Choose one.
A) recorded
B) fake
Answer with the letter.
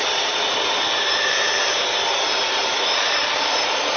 B